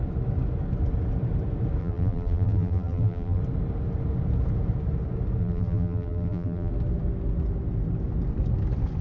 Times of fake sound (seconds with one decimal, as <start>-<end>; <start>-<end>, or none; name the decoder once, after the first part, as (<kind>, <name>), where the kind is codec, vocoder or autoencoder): 1.8-3.4 (vocoder, BigVGAN v2); 5.4-6.7